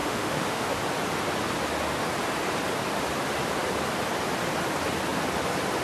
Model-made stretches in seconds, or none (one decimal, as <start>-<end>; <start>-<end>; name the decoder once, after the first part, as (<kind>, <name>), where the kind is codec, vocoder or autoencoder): 0.0-0.8 (autoencoder, DAC-VAE)